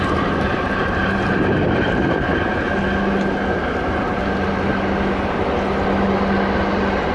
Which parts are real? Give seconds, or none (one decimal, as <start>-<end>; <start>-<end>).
0.0-0.5; 2.0-7.1

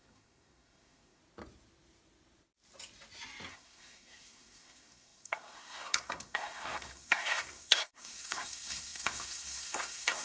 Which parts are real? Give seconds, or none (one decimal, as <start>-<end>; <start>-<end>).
1.2-3.5

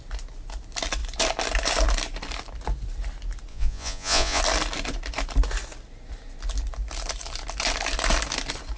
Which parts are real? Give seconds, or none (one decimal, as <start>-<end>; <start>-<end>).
0.0-3.5; 4.4-8.8

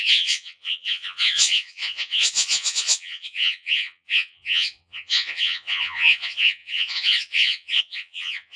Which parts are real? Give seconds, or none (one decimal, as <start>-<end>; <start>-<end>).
none

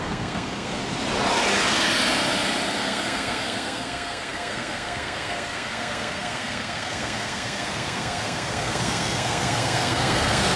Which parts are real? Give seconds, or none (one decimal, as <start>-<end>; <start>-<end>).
0.8-2.8

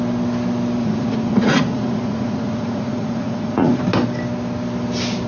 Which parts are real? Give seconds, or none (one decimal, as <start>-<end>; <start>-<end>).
0.0-0.8; 3.8-5.3